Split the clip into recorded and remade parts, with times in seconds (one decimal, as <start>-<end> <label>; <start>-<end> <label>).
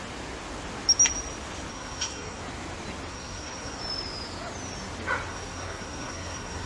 0.0-1.7 recorded; 1.7-2.4 remade; 2.4-3.1 recorded; 3.1-3.8 remade; 3.8-5.3 recorded; 5.3-6.7 remade